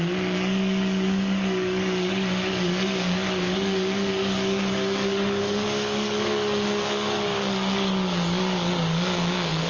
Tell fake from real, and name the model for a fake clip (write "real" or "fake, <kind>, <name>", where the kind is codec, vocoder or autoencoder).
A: fake, codec, DAC